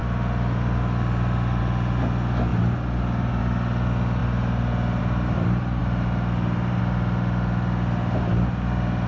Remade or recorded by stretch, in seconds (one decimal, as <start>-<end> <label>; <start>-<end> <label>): 0.0-9.1 recorded